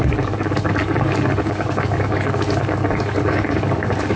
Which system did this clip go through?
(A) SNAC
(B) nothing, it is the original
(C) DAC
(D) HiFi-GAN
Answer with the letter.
C